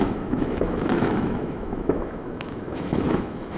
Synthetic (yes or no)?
yes